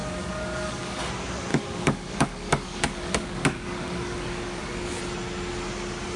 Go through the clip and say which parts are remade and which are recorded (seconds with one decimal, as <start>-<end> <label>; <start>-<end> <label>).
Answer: 0.0-1.1 remade; 1.1-1.5 recorded; 1.5-5.0 remade; 5.0-6.2 recorded